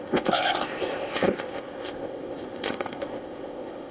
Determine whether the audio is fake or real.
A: fake